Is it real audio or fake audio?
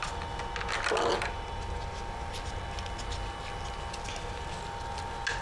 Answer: real